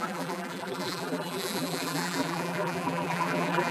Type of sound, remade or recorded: remade